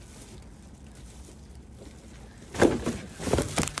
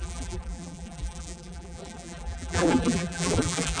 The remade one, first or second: second